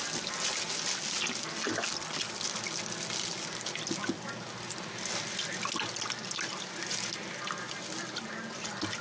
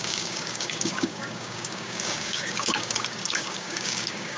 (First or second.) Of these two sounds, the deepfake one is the second